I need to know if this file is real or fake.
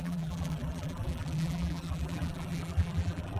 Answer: fake